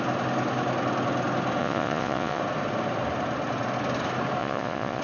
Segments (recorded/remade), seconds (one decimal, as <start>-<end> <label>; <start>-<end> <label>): 0.0-1.6 recorded; 1.6-2.4 remade; 2.4-4.4 recorded; 4.4-5.0 remade